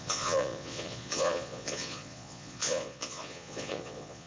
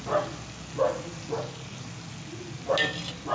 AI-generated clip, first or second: first